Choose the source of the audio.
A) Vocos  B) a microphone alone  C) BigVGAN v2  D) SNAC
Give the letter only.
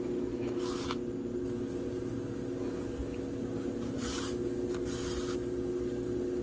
B